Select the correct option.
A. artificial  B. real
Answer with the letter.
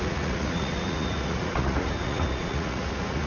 A